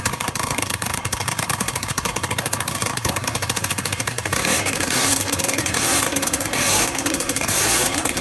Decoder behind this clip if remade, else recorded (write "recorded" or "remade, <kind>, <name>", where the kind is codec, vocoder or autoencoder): remade, codec, SNAC